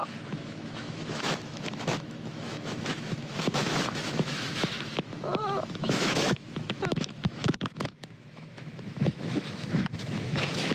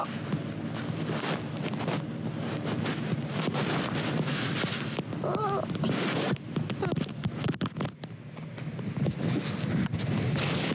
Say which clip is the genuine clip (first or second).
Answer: second